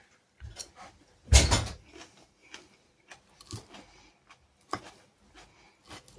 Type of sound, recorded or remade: recorded